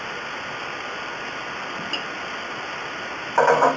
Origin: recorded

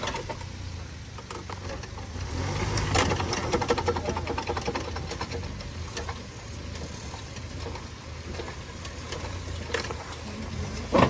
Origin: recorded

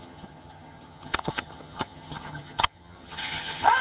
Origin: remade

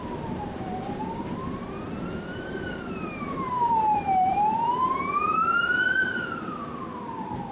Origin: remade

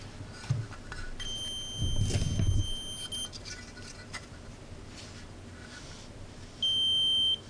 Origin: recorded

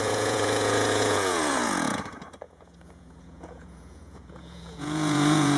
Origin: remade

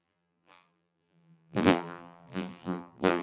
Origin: remade